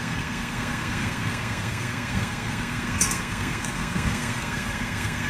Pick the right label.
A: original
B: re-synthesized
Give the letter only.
B